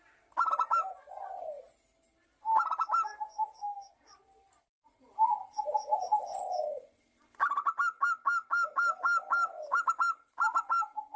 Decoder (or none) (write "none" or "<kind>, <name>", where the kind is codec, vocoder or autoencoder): none